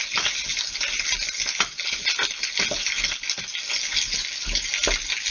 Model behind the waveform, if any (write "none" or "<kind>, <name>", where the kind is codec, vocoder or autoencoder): none